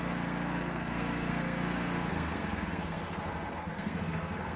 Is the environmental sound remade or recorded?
remade